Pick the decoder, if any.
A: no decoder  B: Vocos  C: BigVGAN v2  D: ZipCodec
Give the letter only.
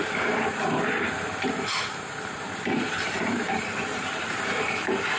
C